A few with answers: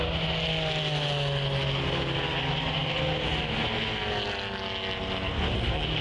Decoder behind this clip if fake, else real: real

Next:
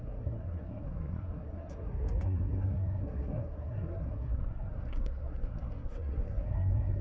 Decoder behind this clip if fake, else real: fake, codec, SNAC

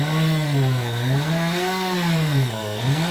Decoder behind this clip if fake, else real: fake, codec, SNAC